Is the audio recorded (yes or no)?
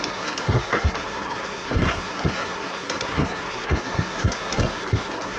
no